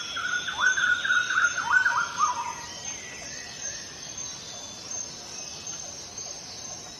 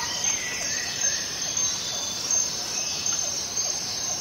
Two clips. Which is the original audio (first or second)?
first